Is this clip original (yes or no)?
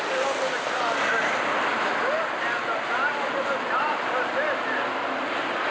yes